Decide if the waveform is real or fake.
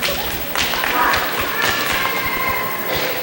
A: real